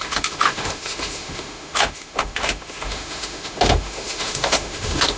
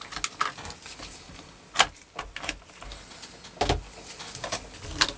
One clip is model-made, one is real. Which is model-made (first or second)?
first